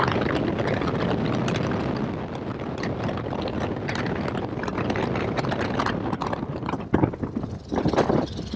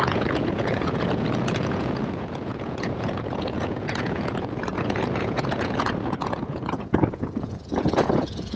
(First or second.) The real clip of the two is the first